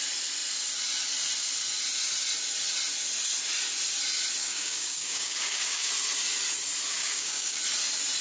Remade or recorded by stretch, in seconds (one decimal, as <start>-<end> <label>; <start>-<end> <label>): 0.0-4.4 recorded; 4.4-5.9 remade; 5.9-7.0 recorded; 7.0-7.6 remade; 7.6-8.2 recorded